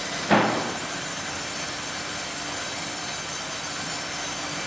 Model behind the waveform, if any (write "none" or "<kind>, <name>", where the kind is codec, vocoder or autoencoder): none